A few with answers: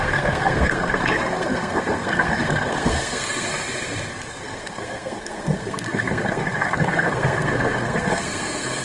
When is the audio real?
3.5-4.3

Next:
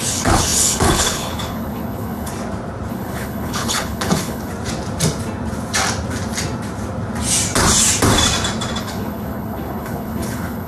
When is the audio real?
2.3-2.9; 4.5-8.8

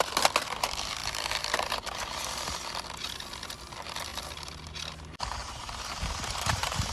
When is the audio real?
0.0-5.4

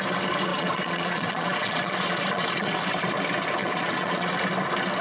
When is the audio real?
0.0-0.5; 2.8-3.6; 4.3-5.0

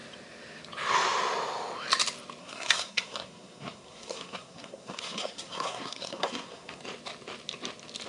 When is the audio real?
0.0-2.4; 6.8-8.1

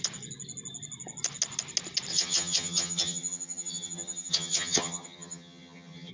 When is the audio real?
0.0-2.1